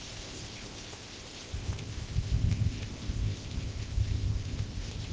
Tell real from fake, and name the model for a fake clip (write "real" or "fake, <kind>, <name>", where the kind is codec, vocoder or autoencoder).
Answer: fake, codec, ZipCodec